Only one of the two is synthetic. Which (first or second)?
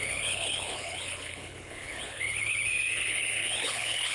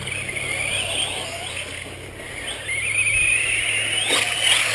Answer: first